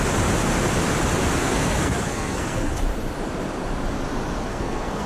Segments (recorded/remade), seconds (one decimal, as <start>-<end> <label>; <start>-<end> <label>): 0.0-1.4 recorded; 1.4-2.7 remade; 2.7-4.5 recorded; 4.5-5.1 remade